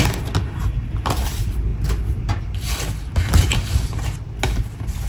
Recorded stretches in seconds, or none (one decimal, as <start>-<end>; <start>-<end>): 0.0-5.1